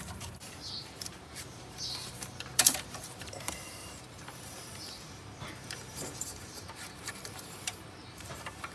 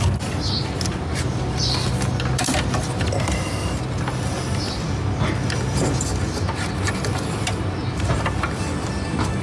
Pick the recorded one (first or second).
second